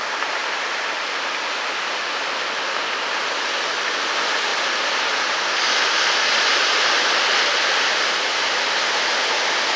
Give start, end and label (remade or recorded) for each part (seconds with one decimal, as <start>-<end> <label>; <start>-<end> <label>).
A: 0.0-9.8 recorded